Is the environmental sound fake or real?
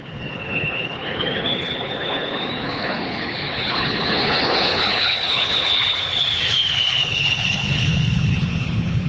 fake